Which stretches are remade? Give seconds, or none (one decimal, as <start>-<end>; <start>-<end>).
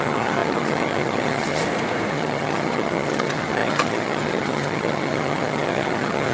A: 0.0-1.6; 2.1-6.3